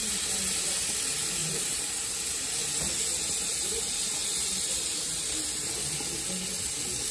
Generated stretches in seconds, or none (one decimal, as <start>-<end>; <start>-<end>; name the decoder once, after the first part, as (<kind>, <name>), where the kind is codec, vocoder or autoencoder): 0.0-1.0 (vocoder, BigVGAN v2); 1.4-2.6